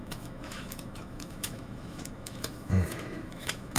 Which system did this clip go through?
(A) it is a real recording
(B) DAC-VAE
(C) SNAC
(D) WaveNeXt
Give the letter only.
B